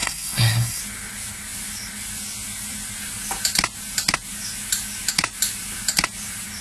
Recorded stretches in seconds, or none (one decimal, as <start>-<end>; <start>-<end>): 0.8-6.6